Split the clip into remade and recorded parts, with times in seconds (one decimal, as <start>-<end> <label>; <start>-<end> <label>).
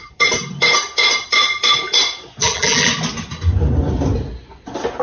0.0-2.4 recorded; 2.4-2.9 remade; 2.9-5.0 recorded